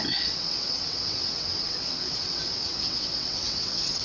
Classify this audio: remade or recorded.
remade